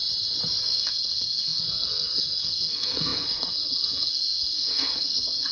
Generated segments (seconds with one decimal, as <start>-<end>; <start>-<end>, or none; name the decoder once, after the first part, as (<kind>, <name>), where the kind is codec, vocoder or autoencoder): 0.6-5.5 (codec, SNAC)